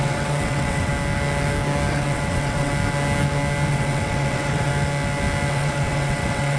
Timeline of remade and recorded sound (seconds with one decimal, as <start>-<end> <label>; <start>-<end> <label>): 0.0-0.9 remade; 0.9-1.9 recorded; 1.9-2.7 remade; 2.7-3.7 recorded; 3.7-4.7 remade; 4.7-5.5 recorded; 5.5-6.6 remade